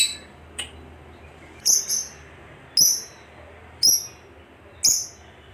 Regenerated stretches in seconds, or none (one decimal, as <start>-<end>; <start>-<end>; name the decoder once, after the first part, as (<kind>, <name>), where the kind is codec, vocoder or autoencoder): 0.0-2.0 (vocoder, BigVGAN v2)

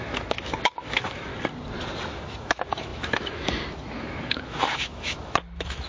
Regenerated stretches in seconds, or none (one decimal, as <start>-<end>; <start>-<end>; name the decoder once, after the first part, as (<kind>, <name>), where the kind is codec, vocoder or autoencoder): 0.0-1.3 (autoencoder, DAC-VAE); 2.1-5.9